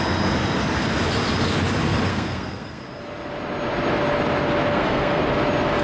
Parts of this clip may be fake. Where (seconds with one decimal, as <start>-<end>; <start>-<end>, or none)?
2.1-2.8; 4.7-5.2